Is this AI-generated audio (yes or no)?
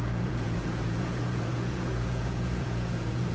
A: yes